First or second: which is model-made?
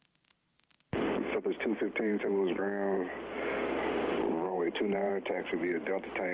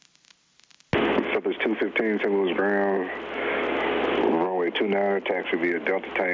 first